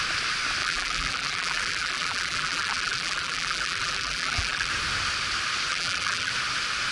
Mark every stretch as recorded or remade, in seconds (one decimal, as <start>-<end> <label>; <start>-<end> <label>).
0.0-0.6 recorded; 0.6-4.7 remade; 4.7-5.7 recorded; 5.7-6.3 remade; 6.3-6.9 recorded

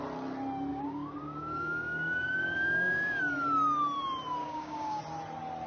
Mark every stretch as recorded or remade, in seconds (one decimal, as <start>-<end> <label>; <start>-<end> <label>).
0.0-0.7 recorded; 0.7-3.2 remade; 3.2-4.4 recorded; 4.4-5.0 remade; 5.0-5.7 recorded

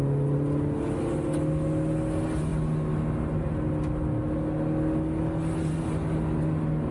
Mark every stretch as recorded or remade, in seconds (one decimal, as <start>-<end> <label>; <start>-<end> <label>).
0.0-6.9 recorded

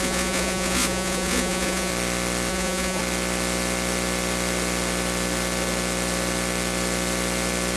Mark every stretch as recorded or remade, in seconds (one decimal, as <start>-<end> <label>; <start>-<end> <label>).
0.0-1.9 remade; 1.9-2.5 recorded; 2.5-3.0 remade; 3.0-7.8 recorded

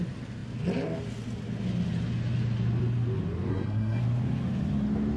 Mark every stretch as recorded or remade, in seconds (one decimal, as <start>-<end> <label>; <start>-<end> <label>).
0.0-3.5 recorded; 3.5-4.0 remade; 4.0-5.2 recorded

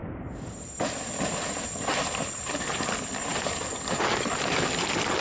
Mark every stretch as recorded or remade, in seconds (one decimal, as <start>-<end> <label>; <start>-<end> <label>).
0.0-5.2 recorded